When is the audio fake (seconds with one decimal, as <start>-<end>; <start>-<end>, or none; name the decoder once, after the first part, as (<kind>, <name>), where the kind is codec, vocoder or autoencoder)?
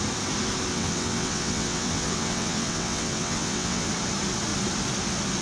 0.7-3.9 (vocoder, WaveNeXt)